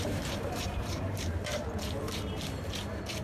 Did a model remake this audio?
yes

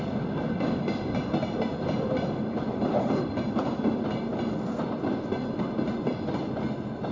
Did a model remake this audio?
yes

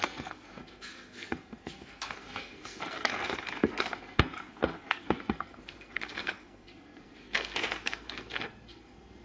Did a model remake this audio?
yes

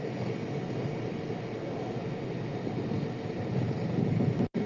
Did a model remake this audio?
no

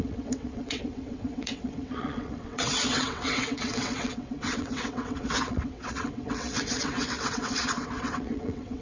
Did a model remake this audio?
yes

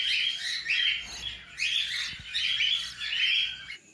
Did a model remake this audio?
no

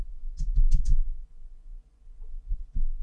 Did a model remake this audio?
yes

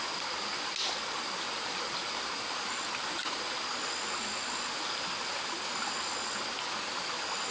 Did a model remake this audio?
no